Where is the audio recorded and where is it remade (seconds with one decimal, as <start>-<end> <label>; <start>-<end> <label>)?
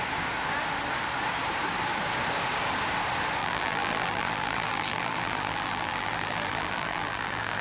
0.0-3.4 recorded; 3.4-7.6 remade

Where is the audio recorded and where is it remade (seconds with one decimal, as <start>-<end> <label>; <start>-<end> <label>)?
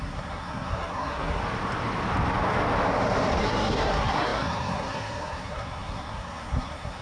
0.0-1.4 remade; 1.4-3.4 recorded; 3.4-7.0 remade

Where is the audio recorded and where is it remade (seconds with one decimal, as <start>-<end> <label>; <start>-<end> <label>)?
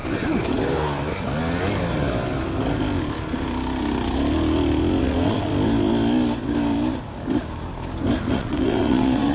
0.0-5.0 recorded; 5.0-5.5 remade; 5.5-8.3 recorded; 8.3-9.3 remade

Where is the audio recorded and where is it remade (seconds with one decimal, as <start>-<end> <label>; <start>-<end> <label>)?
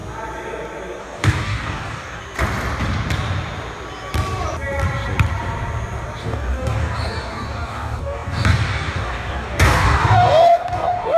0.0-1.0 recorded; 1.0-2.2 remade; 2.2-6.2 recorded; 6.2-11.2 remade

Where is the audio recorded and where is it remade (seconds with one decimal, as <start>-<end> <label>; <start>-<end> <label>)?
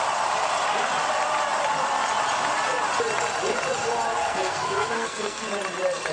0.0-4.1 recorded; 4.1-5.5 remade; 5.5-6.1 recorded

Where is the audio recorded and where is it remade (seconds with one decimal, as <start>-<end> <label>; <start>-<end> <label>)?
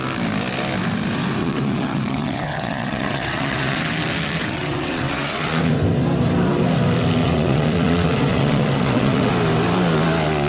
0.0-1.4 recorded; 1.4-3.8 remade; 3.8-4.4 recorded; 4.4-5.7 remade; 5.7-7.2 recorded; 7.2-9.3 remade; 9.3-10.5 recorded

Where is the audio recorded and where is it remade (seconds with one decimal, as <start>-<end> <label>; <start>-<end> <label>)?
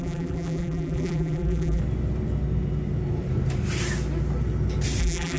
0.0-1.8 remade; 1.8-5.0 recorded; 5.0-5.4 remade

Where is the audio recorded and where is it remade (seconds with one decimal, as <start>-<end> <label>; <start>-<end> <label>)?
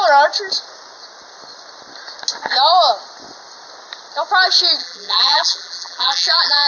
0.0-4.8 recorded; 4.8-6.7 remade